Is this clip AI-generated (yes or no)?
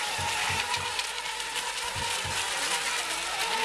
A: no